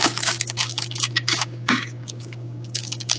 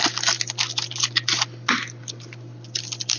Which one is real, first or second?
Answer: second